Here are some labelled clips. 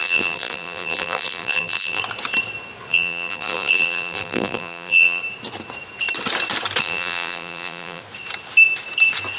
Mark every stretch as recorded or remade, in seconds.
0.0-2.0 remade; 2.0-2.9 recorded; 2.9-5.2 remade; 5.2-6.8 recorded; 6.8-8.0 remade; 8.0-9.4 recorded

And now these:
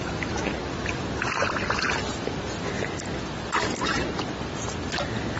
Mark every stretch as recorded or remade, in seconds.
0.0-5.4 recorded